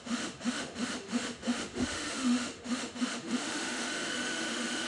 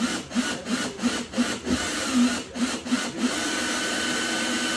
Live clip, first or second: second